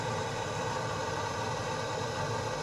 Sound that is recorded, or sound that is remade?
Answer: recorded